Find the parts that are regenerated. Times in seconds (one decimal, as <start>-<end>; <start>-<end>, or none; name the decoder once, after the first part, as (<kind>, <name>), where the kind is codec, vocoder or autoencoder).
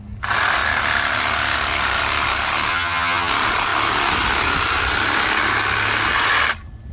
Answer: 2.7-3.3 (vocoder, HiFi-GAN)